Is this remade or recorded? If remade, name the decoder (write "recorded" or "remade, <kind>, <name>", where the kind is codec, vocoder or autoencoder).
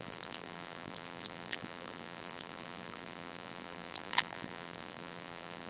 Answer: remade, vocoder, BigVGAN v2